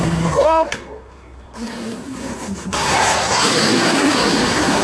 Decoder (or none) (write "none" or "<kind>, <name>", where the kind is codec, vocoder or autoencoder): codec, SNAC